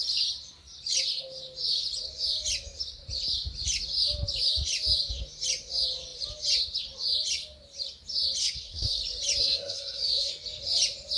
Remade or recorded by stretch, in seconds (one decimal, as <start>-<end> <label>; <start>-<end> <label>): 0.0-8.4 recorded; 8.4-9.0 remade; 9.0-9.4 recorded; 9.4-10.3 remade; 10.3-11.2 recorded